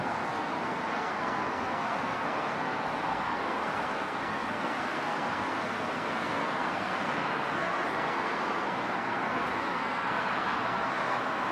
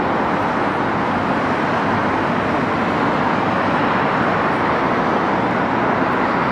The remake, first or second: first